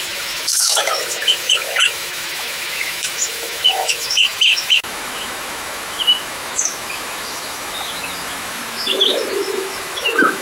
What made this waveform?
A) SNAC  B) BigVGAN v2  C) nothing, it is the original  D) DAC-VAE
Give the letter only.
D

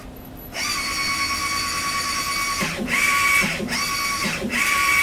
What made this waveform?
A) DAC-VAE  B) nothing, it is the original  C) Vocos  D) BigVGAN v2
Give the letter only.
B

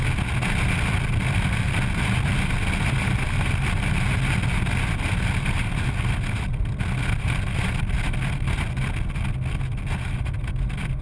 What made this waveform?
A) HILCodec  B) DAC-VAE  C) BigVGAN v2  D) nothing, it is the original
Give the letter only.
D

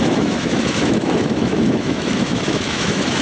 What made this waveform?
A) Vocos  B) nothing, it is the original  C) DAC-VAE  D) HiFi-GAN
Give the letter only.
C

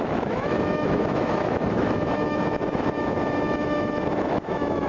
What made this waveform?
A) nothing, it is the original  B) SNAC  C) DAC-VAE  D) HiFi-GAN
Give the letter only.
C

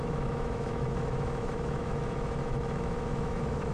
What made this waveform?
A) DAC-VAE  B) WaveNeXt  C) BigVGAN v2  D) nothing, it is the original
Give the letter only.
A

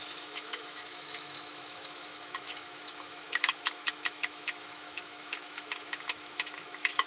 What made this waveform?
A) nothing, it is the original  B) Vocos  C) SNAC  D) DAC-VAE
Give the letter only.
D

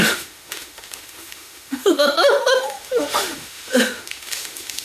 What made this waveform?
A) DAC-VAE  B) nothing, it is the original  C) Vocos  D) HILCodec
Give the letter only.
A